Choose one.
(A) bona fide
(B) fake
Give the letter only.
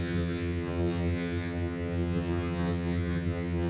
B